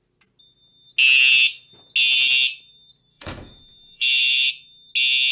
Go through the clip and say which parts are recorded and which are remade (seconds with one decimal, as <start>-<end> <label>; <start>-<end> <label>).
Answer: 0.0-3.1 recorded; 3.1-4.5 remade; 4.5-5.3 recorded